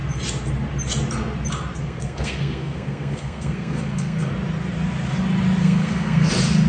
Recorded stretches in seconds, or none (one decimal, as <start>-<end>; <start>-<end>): 0.0-1.8; 4.3-5.6; 6.3-6.7